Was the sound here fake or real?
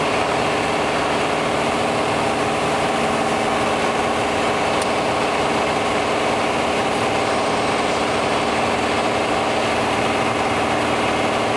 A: real